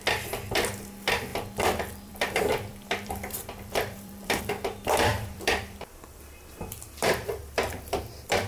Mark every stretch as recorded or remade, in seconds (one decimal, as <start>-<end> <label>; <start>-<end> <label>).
0.0-1.3 recorded; 1.3-4.4 remade; 4.4-5.1 recorded; 5.1-8.0 remade; 8.0-8.5 recorded

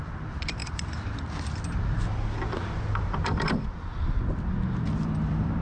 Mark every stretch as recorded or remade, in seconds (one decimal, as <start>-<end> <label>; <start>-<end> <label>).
0.0-0.6 remade; 0.6-1.8 recorded; 1.8-5.6 remade

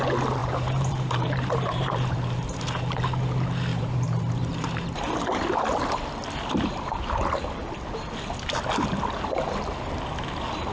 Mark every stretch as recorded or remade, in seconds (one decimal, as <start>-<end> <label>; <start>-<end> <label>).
0.0-0.4 recorded; 0.4-3.0 remade; 3.0-3.7 recorded; 3.7-5.0 remade; 5.0-10.7 recorded

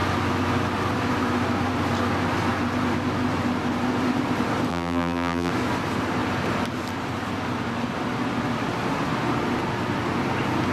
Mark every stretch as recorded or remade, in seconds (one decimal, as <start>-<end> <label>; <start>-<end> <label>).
0.0-4.7 recorded; 4.7-5.5 remade; 5.5-10.7 recorded

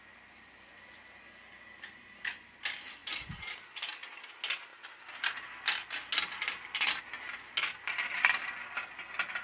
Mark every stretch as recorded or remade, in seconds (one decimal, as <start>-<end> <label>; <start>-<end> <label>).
0.0-9.4 recorded